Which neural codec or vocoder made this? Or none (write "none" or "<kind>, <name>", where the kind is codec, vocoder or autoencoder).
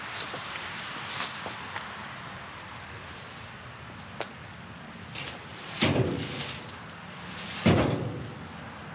none